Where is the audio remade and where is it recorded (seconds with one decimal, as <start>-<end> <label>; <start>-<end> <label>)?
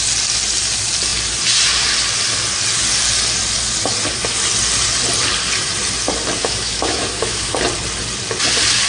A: 0.0-6.4 recorded; 6.4-7.5 remade; 7.5-8.9 recorded